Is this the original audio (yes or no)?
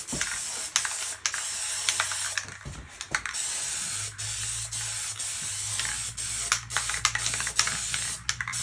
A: yes